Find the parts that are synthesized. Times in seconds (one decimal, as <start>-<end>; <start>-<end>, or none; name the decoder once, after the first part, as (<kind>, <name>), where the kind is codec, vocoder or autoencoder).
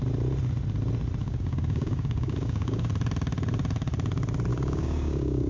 1.2-2.9 (codec, DAC); 4.5-5.5